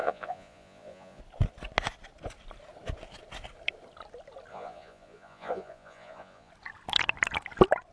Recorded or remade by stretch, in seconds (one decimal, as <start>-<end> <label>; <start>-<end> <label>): 0.0-1.2 remade; 1.2-4.5 recorded; 4.5-6.5 remade; 6.5-7.9 recorded